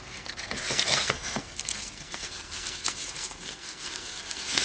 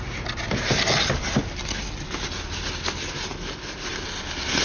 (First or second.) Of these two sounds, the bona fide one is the second